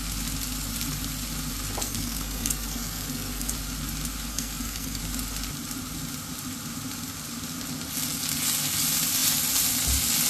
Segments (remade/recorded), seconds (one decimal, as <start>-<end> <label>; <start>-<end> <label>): 0.0-1.8 recorded; 1.8-3.5 remade; 3.5-4.3 recorded; 4.3-5.0 remade; 5.0-10.3 recorded